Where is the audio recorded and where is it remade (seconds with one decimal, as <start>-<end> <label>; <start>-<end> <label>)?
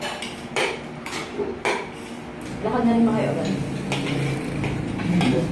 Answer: 0.0-5.5 recorded